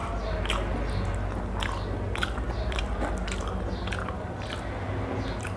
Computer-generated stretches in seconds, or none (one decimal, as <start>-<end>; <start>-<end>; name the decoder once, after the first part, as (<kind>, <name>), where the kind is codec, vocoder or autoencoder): none